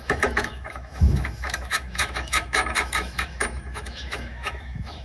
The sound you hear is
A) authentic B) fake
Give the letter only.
B